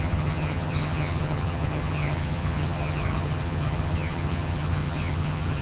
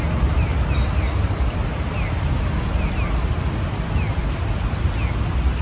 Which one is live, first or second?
second